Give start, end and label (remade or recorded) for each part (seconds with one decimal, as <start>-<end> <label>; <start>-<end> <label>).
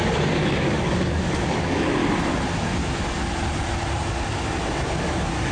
0.0-2.0 remade; 2.0-5.0 recorded; 5.0-5.5 remade